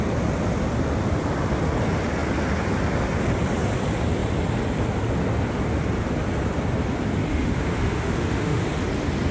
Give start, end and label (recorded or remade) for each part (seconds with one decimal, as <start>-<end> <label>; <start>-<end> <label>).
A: 0.0-7.3 recorded; 7.3-8.6 remade; 8.6-9.3 recorded